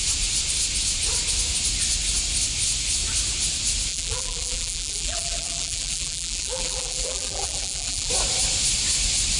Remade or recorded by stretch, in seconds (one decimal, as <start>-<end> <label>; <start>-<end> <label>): 0.0-3.9 recorded; 3.9-8.1 remade; 8.1-9.4 recorded